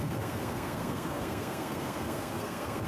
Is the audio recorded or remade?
remade